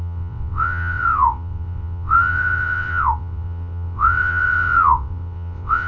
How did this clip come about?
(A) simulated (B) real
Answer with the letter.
A